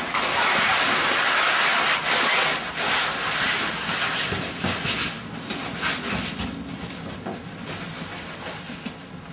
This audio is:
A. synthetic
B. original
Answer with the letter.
B